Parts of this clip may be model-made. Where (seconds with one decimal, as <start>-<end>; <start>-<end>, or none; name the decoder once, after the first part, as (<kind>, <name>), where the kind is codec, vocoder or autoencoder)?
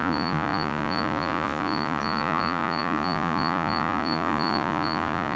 0.0-5.4 (vocoder, Vocos)